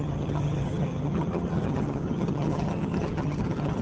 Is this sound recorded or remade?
remade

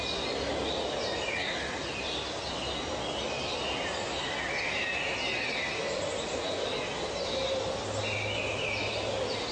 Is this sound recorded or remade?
recorded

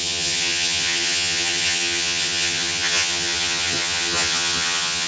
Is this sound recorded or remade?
remade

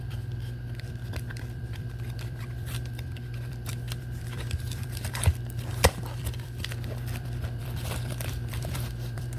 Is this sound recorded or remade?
remade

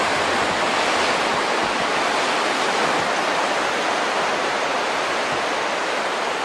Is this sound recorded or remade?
recorded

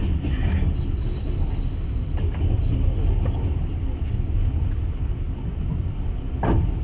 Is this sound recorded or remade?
recorded